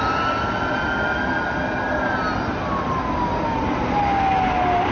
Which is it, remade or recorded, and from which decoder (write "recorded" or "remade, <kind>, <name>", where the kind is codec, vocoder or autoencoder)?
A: recorded